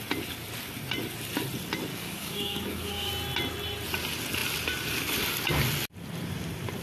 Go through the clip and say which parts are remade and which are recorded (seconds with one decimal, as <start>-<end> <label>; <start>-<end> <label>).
0.0-1.9 recorded; 1.9-3.1 remade; 3.1-6.8 recorded